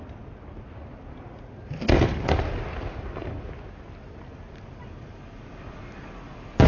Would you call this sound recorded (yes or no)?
yes